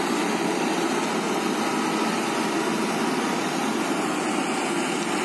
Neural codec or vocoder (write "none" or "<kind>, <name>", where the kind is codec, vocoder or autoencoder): none